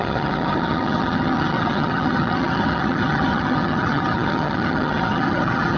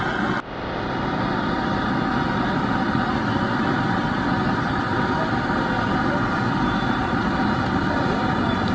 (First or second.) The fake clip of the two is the first